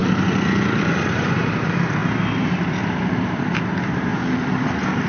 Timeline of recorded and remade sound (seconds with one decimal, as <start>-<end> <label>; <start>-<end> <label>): 0.0-0.8 recorded; 0.8-4.1 remade; 4.1-5.1 recorded